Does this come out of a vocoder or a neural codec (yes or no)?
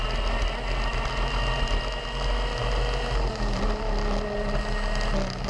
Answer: no